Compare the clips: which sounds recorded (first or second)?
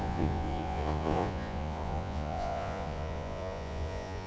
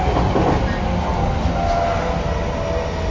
second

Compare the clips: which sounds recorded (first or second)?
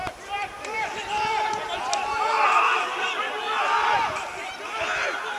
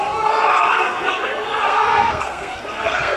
first